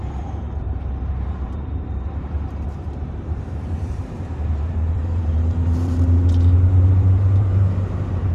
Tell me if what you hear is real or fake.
fake